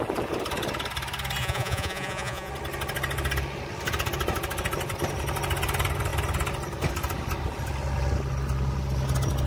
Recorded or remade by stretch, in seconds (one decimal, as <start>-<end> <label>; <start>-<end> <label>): 0.0-1.4 recorded; 1.4-2.5 remade; 2.5-9.5 recorded